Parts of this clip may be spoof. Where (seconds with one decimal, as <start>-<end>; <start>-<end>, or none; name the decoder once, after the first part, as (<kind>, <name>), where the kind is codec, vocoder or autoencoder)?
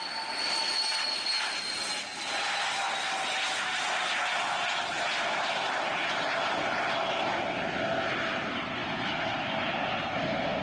none